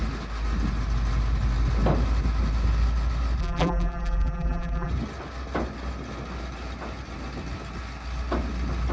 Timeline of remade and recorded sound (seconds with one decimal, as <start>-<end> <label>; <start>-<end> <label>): 0.0-3.4 recorded; 3.4-4.9 remade; 4.9-8.9 recorded